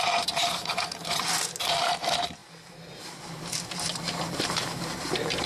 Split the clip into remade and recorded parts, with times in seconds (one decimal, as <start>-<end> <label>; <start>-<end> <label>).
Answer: 0.0-5.5 remade